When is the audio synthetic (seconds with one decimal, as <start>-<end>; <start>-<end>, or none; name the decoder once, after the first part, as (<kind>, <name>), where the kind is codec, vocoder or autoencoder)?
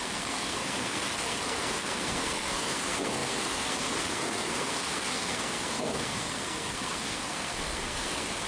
0.0-8.5 (codec, SNAC)